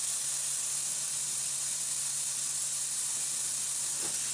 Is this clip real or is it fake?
real